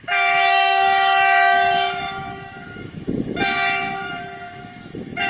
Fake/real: fake